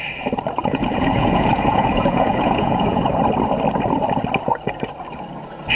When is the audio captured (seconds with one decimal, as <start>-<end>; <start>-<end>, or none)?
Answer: 0.0-0.6; 3.0-5.8